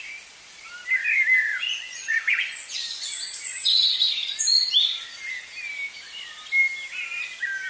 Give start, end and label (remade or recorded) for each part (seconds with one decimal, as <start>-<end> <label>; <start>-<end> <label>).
0.0-1.5 recorded; 1.5-4.4 remade; 4.4-7.7 recorded